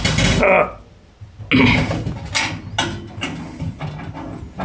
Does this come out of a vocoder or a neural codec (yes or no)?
no